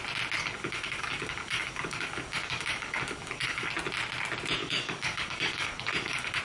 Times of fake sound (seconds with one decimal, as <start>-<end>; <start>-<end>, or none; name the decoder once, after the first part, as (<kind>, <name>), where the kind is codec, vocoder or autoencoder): 0.4-3.7 (codec, DAC); 4.6-6.4